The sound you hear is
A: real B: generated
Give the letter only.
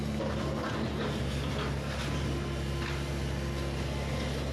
A